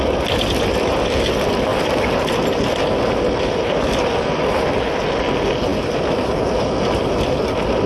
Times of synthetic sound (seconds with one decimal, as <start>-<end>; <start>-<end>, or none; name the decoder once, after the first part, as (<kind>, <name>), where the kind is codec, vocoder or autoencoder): none